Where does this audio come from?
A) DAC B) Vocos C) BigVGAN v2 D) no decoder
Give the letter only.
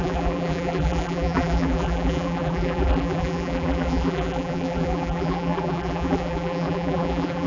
C